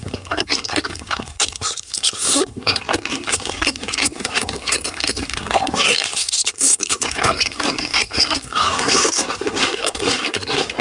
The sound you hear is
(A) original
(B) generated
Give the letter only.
B